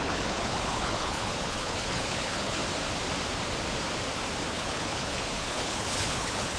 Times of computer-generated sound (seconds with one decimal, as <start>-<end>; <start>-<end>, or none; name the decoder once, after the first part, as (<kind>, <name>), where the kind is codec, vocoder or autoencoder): 0.0-2.6 (codec, HILCodec); 4.5-6.6